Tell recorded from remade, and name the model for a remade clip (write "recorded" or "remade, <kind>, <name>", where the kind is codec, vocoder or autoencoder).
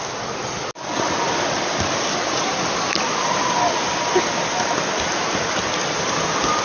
recorded